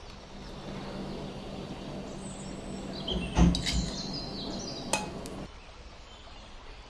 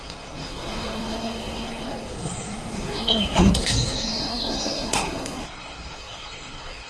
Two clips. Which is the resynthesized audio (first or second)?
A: second